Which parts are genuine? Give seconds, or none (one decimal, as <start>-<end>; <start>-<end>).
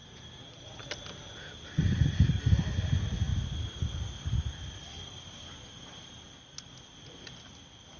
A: 0.0-8.0